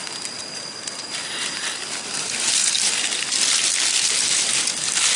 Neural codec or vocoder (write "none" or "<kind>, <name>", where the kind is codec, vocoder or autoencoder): none